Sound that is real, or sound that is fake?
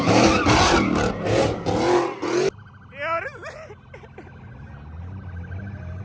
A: real